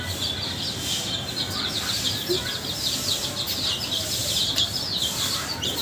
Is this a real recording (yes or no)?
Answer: yes